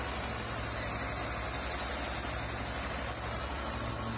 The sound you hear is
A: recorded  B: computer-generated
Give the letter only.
A